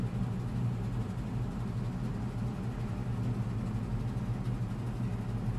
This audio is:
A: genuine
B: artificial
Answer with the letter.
A